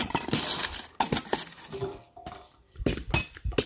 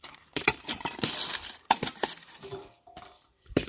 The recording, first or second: first